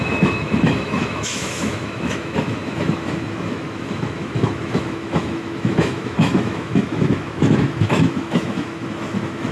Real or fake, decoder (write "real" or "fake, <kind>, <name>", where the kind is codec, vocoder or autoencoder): fake, autoencoder, DAC-VAE